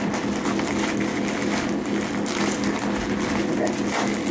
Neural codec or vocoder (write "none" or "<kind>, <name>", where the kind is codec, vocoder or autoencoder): none